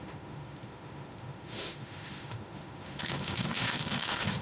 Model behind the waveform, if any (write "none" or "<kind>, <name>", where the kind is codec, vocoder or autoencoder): autoencoder, DAC-VAE